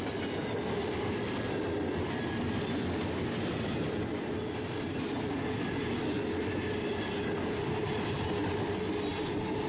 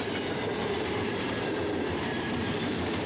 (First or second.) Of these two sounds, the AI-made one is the second